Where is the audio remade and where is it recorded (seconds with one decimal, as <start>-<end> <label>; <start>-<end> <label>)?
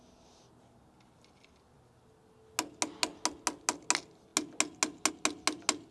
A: 0.0-5.9 recorded